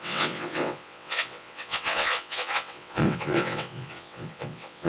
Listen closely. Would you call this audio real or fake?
fake